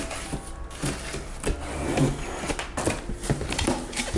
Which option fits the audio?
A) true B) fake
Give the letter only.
A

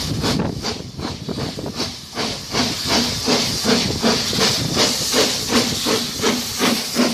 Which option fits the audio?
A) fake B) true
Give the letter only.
A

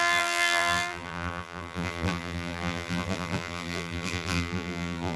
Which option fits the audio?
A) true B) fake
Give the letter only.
B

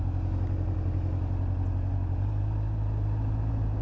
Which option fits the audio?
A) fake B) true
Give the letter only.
B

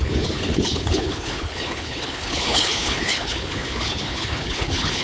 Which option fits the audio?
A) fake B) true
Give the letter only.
A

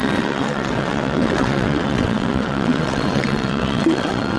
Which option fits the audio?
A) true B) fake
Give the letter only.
B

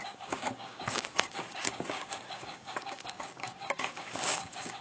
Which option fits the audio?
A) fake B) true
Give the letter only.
A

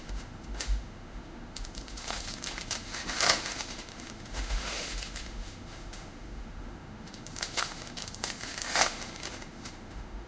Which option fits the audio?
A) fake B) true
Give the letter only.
A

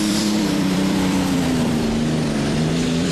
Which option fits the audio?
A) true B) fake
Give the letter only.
B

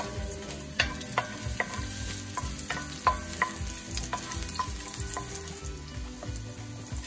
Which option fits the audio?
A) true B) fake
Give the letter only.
A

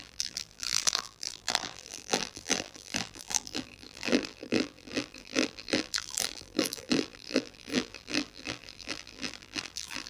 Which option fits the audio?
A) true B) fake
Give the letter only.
B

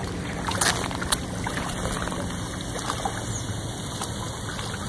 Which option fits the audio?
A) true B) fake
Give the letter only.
A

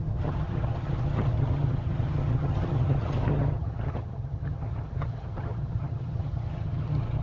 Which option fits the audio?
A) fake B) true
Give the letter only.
A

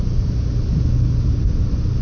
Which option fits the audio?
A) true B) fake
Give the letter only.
A